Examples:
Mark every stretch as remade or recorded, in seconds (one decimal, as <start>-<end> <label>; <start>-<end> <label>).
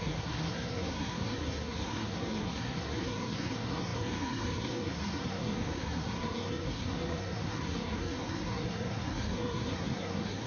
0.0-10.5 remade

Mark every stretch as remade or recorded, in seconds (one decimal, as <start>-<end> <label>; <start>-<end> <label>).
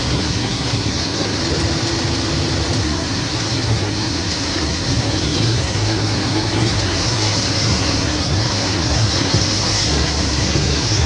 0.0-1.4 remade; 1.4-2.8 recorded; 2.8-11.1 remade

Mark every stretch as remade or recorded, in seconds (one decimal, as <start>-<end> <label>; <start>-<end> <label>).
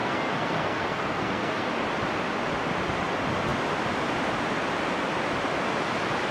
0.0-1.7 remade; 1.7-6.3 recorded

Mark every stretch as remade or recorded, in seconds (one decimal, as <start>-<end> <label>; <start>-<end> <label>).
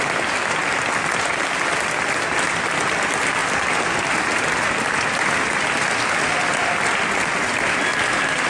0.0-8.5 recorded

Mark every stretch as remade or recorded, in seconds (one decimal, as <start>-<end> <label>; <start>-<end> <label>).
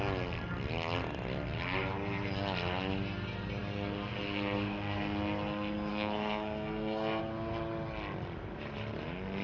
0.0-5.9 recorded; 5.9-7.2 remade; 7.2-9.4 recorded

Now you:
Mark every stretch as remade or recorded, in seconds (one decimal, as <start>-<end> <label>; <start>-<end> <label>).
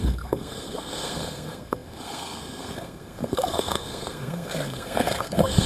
0.0-5.7 remade